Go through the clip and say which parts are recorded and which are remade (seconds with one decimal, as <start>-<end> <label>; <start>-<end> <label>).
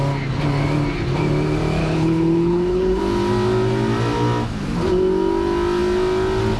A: 0.0-1.8 recorded; 1.8-3.0 remade; 3.0-6.6 recorded